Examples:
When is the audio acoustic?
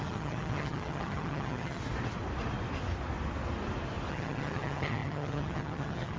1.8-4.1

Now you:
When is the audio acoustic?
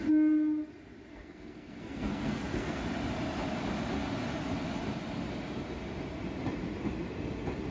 0.0-1.1; 2.8-7.7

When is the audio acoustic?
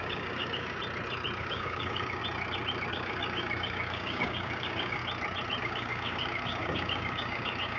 0.8-1.4; 2.2-2.9; 5.0-5.6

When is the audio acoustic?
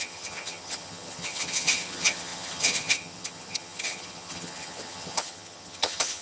none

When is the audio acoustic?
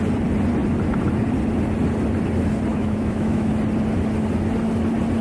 0.0-2.7; 3.5-5.2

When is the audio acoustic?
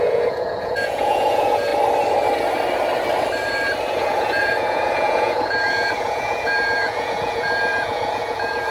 1.7-3.9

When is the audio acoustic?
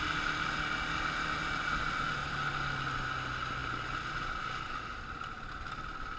0.0-6.2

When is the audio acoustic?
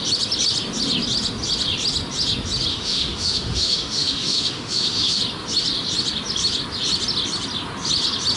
0.0-2.7; 5.2-8.4